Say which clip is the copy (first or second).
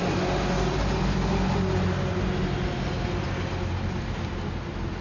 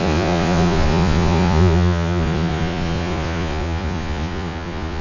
second